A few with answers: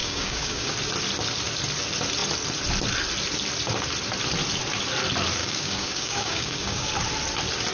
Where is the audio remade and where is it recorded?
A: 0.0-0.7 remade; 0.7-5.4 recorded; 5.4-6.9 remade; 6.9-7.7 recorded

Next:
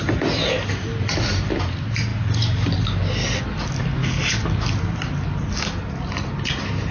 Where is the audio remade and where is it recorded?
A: 0.0-6.9 recorded